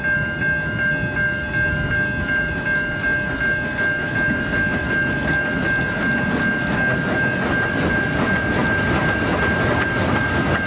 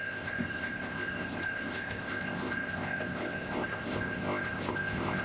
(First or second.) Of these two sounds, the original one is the first